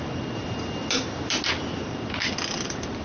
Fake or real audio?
real